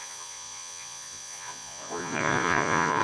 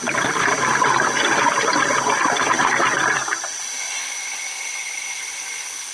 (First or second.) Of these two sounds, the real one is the second